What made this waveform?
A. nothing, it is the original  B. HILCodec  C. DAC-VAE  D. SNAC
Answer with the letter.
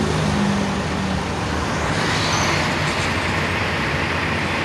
A